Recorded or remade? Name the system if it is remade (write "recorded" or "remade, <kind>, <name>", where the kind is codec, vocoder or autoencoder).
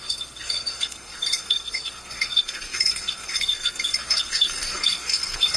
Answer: remade, codec, SNAC